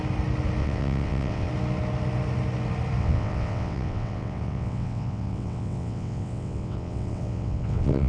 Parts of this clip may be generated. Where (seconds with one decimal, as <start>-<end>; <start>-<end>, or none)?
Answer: 0.6-1.5; 3.0-8.1